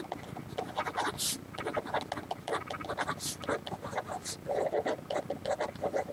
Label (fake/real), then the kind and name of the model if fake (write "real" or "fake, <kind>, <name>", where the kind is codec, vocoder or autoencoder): real